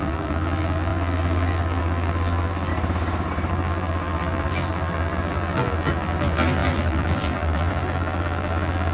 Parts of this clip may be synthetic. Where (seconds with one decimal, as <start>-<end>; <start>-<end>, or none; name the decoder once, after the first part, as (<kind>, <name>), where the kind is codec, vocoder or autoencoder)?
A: 0.0-2.7 (vocoder, BigVGAN v2); 3.5-8.9